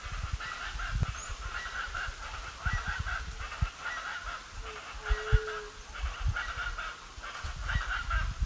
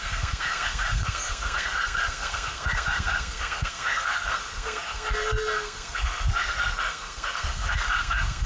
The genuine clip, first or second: first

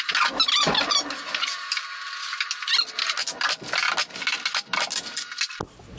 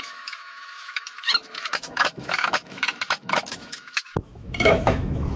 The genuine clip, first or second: first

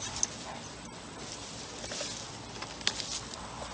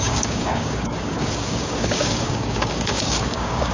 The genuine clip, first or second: first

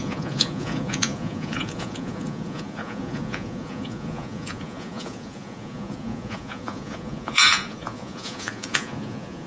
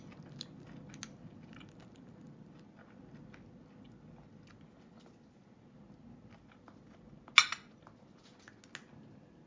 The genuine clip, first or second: second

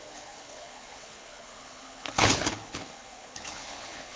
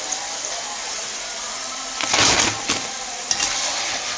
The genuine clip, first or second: second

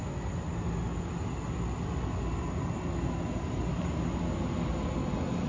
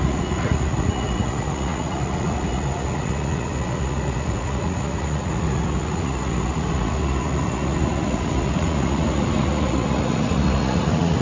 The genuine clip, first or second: first